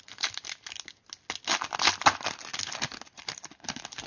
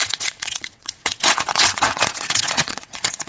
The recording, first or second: first